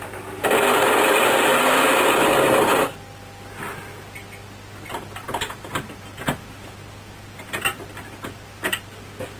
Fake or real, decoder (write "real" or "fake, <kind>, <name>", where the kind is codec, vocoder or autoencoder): real